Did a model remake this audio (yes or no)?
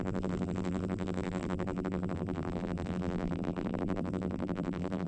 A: yes